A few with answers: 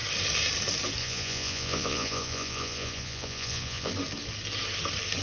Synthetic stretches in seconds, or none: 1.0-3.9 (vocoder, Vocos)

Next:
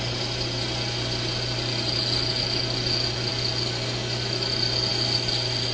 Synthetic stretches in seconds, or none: none

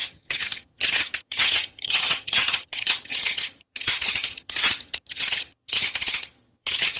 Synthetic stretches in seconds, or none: 0.0-7.0 (vocoder, HiFi-GAN)

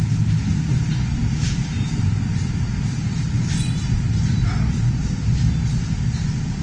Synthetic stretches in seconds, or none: 1.2-5.2 (vocoder, BigVGAN v2)

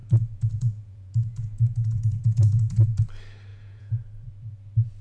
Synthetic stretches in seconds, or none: 0.0-3.0 (vocoder, Vocos); 3.5-4.3

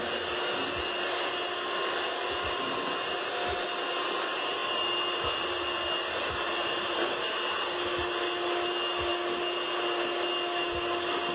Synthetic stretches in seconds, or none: none